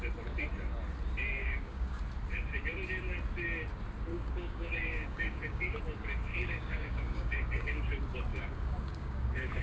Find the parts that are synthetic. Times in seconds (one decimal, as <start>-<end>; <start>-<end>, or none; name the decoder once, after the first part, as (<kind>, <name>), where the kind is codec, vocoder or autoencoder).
1.4-2.0 (codec, DAC); 4.1-5.8; 6.3-7.8; 8.3-9.6